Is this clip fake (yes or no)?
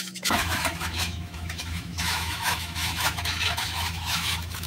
yes